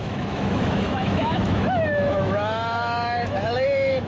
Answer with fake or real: fake